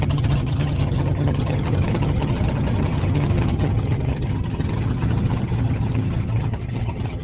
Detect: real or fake fake